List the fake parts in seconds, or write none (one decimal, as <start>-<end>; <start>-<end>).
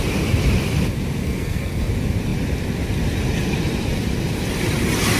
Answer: 1.2-1.9